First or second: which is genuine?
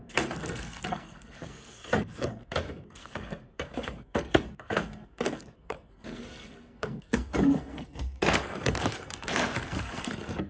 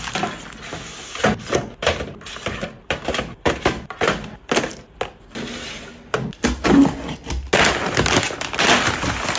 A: second